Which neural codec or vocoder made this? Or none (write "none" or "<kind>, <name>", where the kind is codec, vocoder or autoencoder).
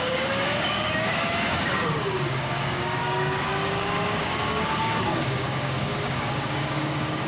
codec, DAC